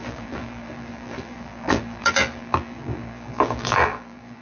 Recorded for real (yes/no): no